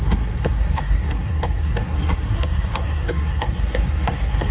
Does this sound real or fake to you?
fake